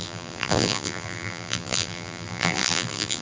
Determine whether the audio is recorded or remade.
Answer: remade